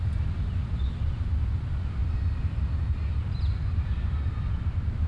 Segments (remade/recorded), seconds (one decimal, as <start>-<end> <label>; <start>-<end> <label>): 0.0-5.1 recorded